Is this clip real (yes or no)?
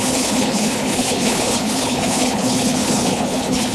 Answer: no